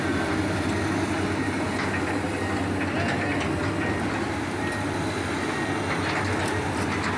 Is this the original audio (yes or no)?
yes